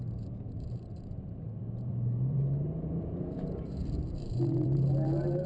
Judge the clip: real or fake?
fake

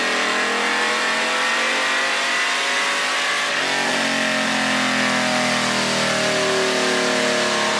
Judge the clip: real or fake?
real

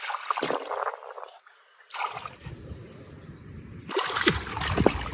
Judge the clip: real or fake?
fake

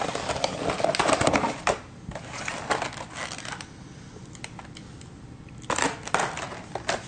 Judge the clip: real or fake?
real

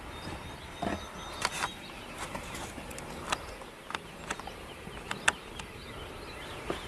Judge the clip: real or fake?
real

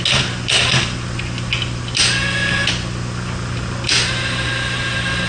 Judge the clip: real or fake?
real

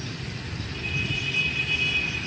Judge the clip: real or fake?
real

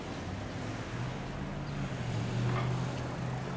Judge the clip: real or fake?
real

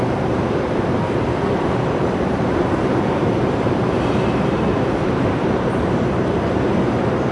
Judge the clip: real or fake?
fake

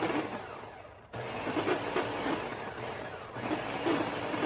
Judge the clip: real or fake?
real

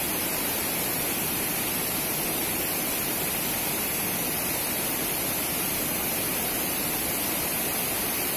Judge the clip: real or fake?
fake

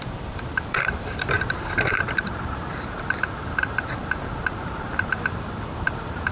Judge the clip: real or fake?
fake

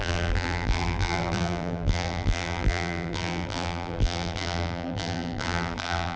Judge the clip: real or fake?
fake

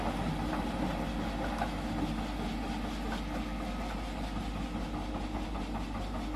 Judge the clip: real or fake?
real